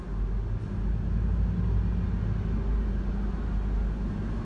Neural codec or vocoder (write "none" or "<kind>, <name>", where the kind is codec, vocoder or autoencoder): none